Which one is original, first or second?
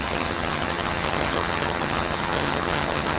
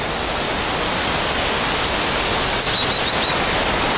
second